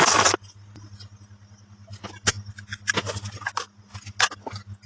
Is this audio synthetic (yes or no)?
no